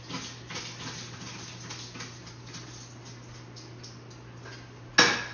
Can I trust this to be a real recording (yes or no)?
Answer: yes